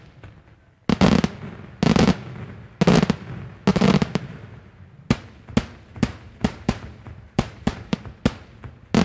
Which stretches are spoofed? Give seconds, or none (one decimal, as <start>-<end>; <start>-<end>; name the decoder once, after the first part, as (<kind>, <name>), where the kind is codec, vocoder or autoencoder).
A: 3.7-4.7 (vocoder, BigVGAN v2); 5.9-8.2

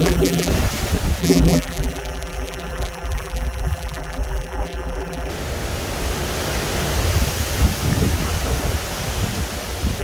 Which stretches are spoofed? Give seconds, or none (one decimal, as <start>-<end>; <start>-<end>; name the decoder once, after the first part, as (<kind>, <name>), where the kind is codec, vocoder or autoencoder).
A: 0.0-0.5 (vocoder, BigVGAN v2); 1.2-5.3

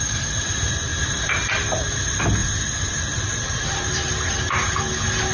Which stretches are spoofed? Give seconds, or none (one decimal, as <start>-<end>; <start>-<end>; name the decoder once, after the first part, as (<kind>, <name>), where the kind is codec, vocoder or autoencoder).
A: 0.9-1.5 (vocoder, BigVGAN v2); 2.4-4.8